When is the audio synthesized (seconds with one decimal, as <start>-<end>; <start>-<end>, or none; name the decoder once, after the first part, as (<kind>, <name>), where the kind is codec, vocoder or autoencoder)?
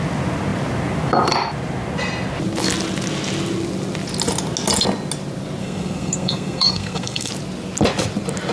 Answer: 5.6-7.3 (codec, SNAC)